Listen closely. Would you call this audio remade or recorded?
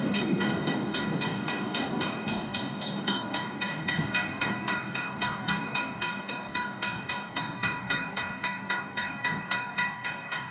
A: remade